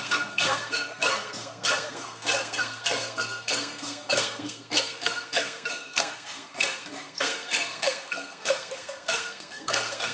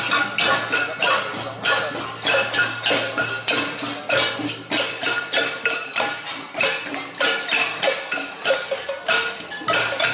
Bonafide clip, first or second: second